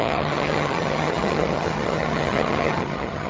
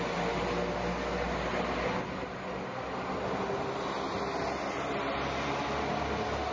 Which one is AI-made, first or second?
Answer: first